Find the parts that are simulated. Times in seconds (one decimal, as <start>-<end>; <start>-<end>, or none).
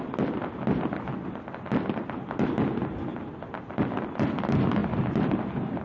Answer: none